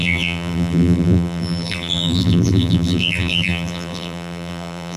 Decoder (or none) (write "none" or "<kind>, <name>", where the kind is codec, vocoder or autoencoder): vocoder, BigVGAN v2